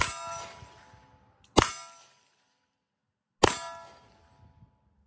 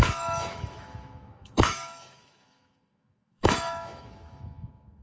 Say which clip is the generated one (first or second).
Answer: second